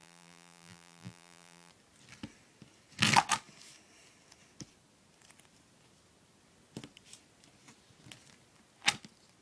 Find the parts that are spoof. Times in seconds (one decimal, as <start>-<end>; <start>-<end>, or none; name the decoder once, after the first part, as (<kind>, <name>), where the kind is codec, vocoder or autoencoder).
0.0-1.7 (vocoder, BigVGAN v2)